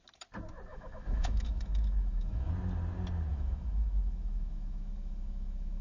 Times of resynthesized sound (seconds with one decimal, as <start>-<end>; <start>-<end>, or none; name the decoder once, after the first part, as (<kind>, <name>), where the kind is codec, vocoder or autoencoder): 0.7-2.5 (autoencoder, DAC-VAE); 3.3-5.8